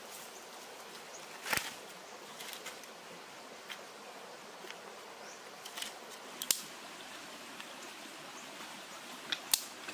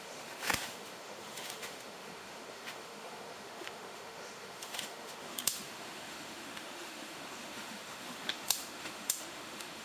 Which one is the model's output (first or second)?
second